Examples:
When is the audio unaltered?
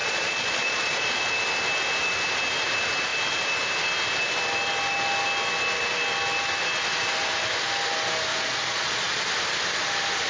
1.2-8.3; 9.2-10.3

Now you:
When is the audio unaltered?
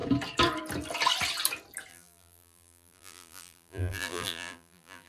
0.0-1.9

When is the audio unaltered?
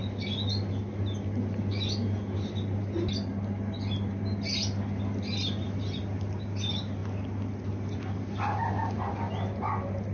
0.0-10.1